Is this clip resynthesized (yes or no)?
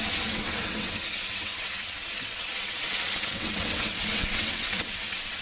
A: yes